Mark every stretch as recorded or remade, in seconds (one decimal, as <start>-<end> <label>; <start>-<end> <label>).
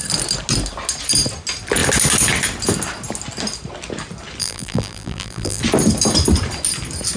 0.0-4.4 recorded; 4.4-5.6 remade; 5.6-7.2 recorded